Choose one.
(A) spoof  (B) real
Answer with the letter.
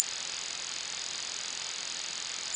B